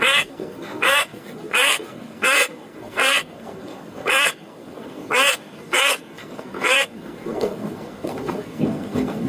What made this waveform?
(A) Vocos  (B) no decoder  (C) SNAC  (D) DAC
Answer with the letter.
C